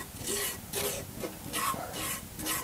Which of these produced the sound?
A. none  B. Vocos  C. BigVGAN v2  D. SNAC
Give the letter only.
A